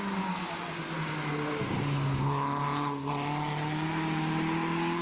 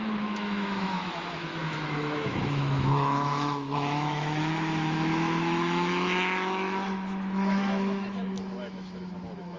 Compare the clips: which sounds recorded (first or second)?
first